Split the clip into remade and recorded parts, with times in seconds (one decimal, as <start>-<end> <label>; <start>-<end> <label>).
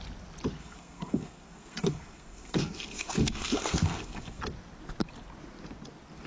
0.0-0.6 recorded; 0.6-4.4 remade; 4.4-6.3 recorded